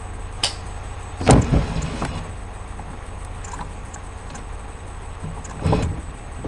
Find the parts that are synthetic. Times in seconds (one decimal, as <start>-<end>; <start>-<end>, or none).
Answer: none